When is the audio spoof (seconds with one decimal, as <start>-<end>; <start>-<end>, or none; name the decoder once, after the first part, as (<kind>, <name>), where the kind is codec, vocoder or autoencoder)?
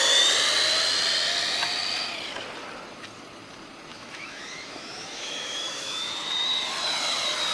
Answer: 3.9-6.1 (autoencoder, DAC-VAE)